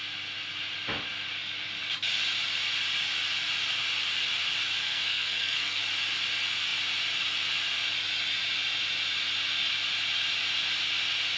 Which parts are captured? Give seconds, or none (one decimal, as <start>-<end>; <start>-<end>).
0.0-4.8; 5.8-11.4